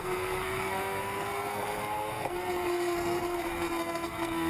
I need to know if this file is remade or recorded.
remade